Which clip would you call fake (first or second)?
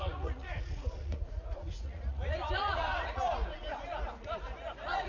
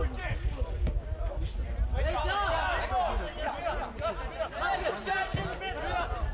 first